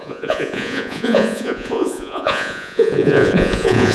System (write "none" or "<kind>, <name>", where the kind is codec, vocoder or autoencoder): vocoder, Vocos